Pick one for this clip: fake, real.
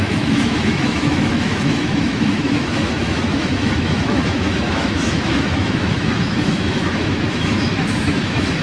fake